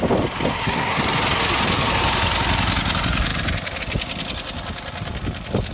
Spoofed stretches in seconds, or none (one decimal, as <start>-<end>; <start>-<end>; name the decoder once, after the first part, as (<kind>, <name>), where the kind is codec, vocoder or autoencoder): 0.5-1.0 (codec, SNAC)